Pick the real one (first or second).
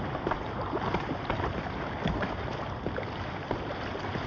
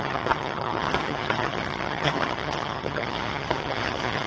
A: first